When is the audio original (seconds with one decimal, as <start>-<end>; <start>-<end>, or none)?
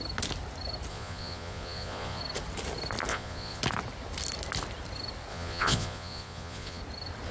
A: 0.0-0.9; 2.2-3.1; 3.6-5.3; 6.8-7.3